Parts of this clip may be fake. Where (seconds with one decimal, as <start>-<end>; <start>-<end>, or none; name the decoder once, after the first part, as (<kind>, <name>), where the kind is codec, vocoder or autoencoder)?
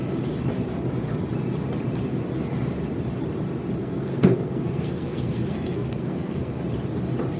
3.8-6.6 (codec, SNAC)